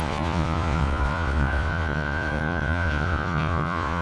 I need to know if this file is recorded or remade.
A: remade